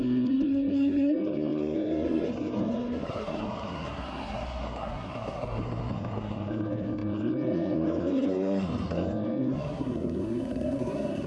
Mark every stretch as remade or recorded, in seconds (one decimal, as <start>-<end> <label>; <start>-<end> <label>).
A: 0.0-11.3 remade